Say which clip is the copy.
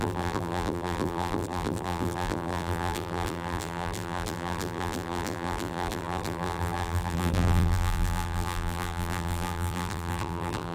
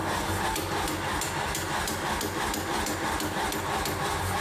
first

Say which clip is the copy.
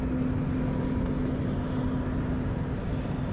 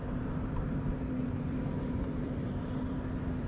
second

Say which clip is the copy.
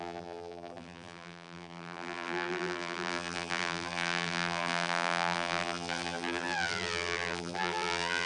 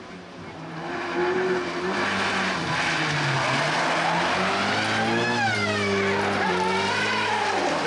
first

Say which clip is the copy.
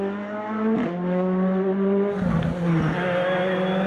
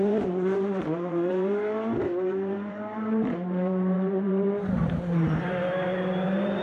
second